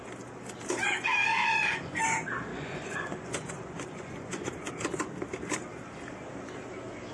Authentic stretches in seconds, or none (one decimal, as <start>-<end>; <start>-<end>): 0.0-1.2; 2.0-2.5; 4.7-7.1